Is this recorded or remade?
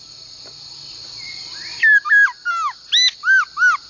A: recorded